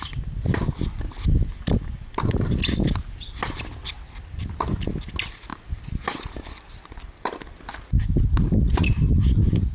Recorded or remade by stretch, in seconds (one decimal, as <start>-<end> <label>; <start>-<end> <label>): 0.0-9.7 recorded

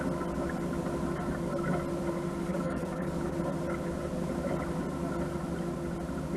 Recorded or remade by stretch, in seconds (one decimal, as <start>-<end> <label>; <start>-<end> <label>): 0.0-2.5 recorded; 2.5-3.4 remade; 3.4-6.4 recorded

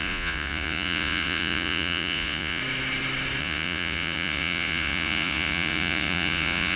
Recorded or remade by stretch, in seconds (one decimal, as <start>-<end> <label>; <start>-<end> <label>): 0.0-2.6 remade; 2.6-3.4 recorded; 3.4-6.8 remade

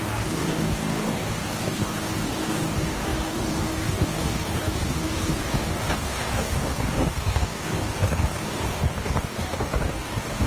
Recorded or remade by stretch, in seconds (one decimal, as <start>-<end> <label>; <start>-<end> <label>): 0.0-10.5 remade